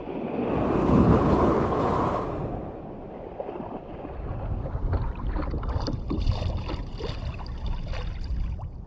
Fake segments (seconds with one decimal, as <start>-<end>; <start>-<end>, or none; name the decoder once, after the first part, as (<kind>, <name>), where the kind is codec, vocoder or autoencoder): 0.8-1.9 (codec, HILCodec)